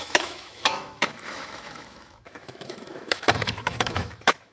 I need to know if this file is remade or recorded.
remade